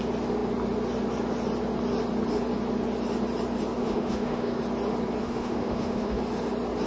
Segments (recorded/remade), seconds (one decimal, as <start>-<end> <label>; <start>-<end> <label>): 0.0-3.8 recorded; 3.8-4.6 remade; 4.6-5.2 recorded; 5.2-6.2 remade; 6.2-6.9 recorded